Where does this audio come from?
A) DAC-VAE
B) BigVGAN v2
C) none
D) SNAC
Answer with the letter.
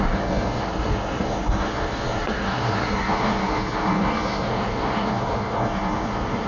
D